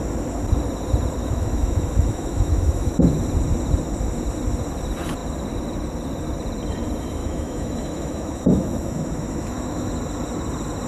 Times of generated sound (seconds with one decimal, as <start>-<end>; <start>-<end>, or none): 1.2-3.2; 7.2-9.9